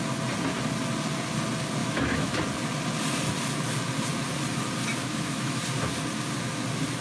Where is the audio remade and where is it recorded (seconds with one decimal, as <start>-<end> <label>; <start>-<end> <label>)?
0.0-1.8 recorded; 1.8-2.4 remade; 2.4-5.0 recorded; 5.0-5.6 remade; 5.6-7.0 recorded